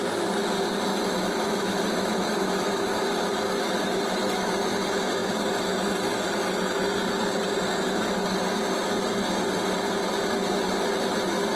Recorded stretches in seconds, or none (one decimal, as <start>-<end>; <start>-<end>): 0.0-0.9; 4.5-11.6